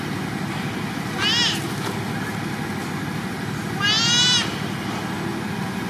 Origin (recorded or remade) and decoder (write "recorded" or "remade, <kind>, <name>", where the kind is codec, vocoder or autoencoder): recorded